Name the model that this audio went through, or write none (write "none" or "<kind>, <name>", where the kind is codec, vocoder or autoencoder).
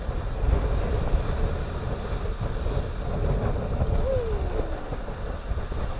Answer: none